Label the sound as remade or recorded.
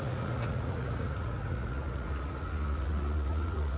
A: remade